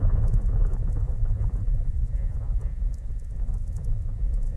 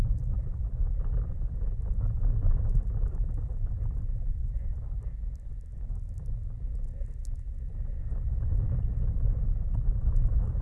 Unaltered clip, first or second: second